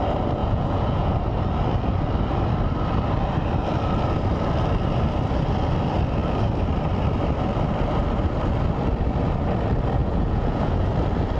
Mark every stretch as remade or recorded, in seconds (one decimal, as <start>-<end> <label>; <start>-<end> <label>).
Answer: 0.0-0.4 recorded; 0.4-1.2 remade; 1.2-10.0 recorded; 10.0-10.9 remade; 10.9-11.4 recorded